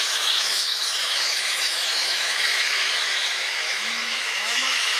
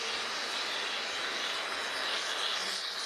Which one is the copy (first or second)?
first